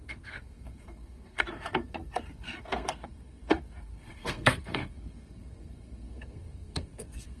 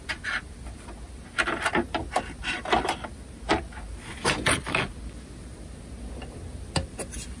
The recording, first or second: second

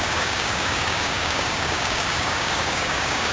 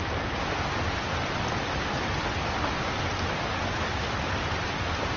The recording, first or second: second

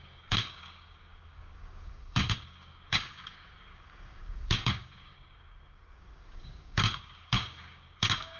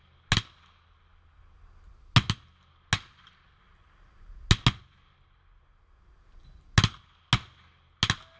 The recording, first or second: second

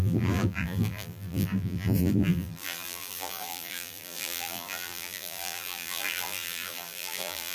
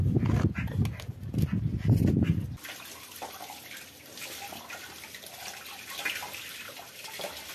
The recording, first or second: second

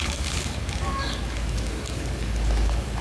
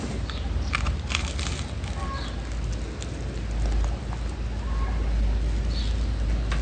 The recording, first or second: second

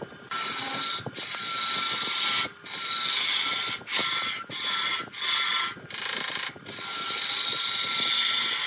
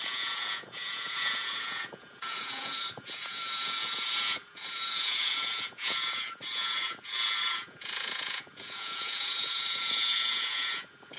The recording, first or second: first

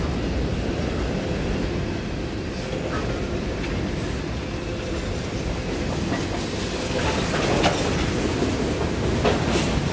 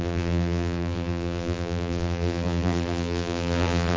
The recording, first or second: first